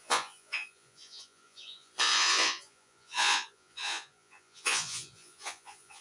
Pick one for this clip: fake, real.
fake